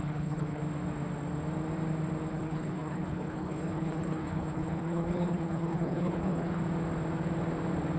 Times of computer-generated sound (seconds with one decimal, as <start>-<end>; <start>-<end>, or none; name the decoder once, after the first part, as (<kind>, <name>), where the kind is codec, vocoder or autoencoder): 0.0-0.6 (codec, HILCodec); 2.3-6.6